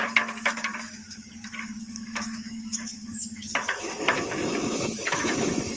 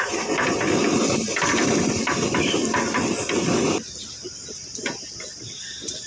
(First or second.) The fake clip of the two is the first